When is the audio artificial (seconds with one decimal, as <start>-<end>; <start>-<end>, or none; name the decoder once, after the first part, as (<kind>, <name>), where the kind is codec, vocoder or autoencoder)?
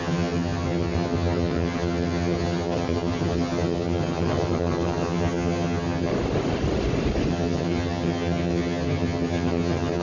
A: 0.0-6.1 (vocoder, HiFi-GAN); 7.3-10.0